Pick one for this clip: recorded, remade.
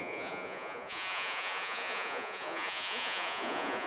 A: remade